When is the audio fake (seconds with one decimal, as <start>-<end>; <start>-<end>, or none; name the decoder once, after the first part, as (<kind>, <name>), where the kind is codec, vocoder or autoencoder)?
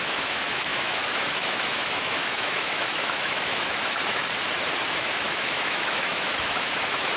0.0-4.2 (autoencoder, DAC-VAE); 4.9-7.2